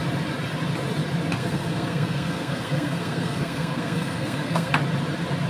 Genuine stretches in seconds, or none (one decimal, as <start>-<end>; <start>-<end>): 0.0-1.4; 4.7-5.5